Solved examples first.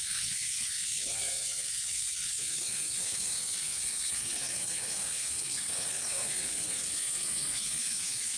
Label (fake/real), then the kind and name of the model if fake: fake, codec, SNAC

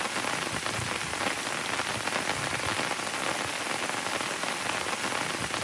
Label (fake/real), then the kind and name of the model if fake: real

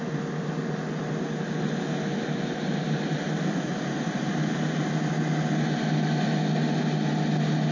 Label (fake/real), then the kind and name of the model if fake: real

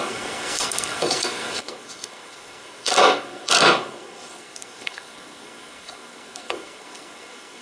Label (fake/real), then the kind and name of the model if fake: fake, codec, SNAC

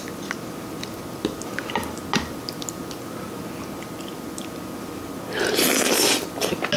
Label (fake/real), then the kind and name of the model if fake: real